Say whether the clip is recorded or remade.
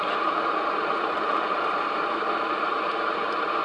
remade